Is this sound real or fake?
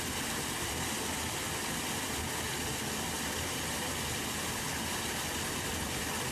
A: real